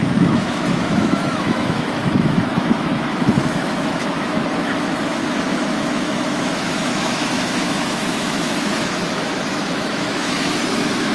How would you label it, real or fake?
fake